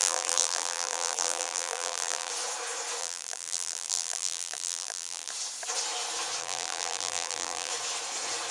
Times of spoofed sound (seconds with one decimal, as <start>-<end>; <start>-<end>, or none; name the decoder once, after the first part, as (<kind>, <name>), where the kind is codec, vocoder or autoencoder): 0.0-2.3 (vocoder, BigVGAN v2); 3.0-5.3; 6.4-7.7